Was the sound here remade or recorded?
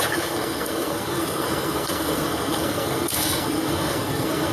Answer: remade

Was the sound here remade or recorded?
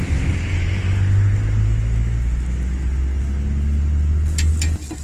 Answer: recorded